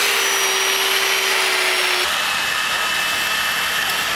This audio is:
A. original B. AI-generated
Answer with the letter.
A